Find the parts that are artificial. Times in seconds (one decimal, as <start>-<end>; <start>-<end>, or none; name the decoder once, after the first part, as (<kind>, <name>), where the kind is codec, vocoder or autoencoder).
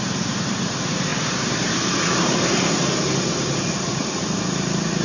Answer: 0.0-5.0 (vocoder, BigVGAN v2)